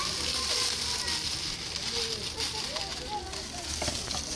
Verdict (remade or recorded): recorded